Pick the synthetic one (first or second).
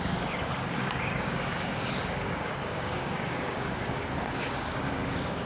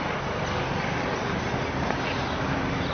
first